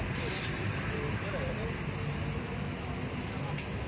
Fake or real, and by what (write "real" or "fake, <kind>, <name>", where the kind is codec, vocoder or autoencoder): real